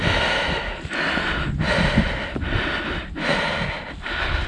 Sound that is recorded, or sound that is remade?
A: recorded